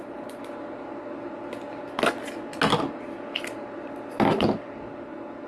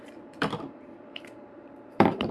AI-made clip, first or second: second